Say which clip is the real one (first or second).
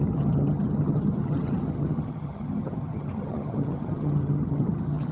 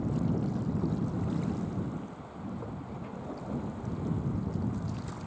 second